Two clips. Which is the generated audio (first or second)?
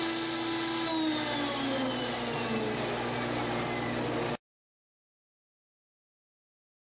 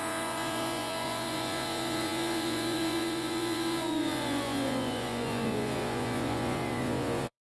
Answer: second